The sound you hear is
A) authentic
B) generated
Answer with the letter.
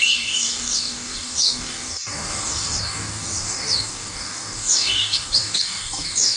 B